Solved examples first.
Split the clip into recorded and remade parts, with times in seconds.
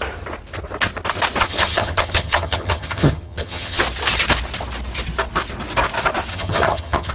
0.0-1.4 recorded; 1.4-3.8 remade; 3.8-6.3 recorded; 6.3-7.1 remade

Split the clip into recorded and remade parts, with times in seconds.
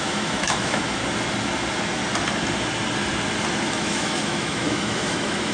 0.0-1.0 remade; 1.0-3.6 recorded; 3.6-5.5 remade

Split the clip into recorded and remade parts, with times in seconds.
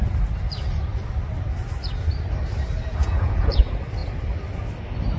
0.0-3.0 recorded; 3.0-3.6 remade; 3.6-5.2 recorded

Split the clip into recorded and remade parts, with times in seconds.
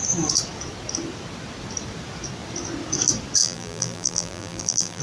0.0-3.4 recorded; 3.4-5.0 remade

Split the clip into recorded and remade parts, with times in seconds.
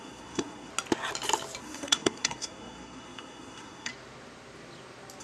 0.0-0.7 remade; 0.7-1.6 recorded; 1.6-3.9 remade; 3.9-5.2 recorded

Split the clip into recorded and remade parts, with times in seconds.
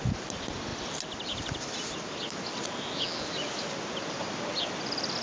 0.0-5.2 recorded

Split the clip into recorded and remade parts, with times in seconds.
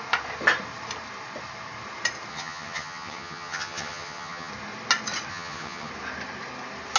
0.0-2.3 recorded; 2.3-4.5 remade; 4.5-5.3 recorded; 5.3-5.9 remade; 5.9-7.0 recorded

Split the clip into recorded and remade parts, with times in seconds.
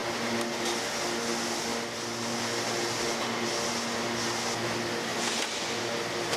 0.0-6.4 recorded